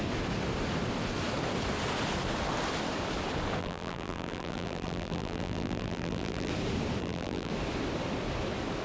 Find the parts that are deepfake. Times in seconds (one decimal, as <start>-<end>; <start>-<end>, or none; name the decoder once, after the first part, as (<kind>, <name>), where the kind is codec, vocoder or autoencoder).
3.6-6.5 (vocoder, BigVGAN v2); 7.0-7.5